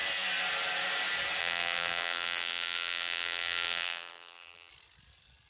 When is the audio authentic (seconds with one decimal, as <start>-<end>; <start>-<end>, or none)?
0.0-1.4; 4.7-5.5